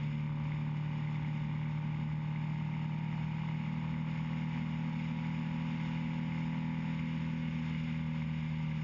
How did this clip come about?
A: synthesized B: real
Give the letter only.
B